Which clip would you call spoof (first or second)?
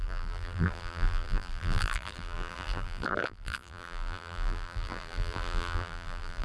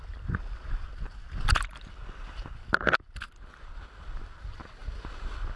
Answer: first